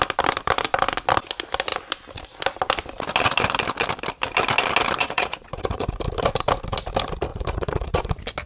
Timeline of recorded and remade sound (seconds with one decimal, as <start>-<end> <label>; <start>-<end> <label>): 0.0-5.0 recorded; 5.0-5.9 remade; 5.9-7.3 recorded; 7.3-8.1 remade; 8.1-8.5 recorded